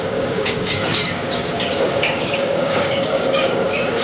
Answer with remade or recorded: remade